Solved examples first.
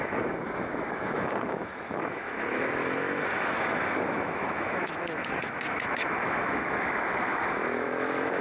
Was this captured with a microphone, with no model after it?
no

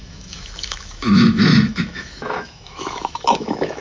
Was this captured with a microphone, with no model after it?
no